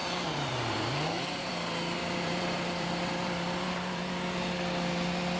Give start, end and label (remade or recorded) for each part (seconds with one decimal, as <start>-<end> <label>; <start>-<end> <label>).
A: 0.0-1.5 remade; 1.5-2.0 recorded; 2.0-4.1 remade; 4.1-5.4 recorded